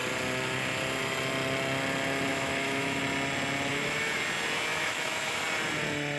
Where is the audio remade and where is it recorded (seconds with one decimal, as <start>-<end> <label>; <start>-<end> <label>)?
0.0-2.3 recorded; 2.3-3.0 remade; 3.0-3.7 recorded; 3.7-4.2 remade; 4.2-4.7 recorded; 4.7-5.4 remade; 5.4-6.2 recorded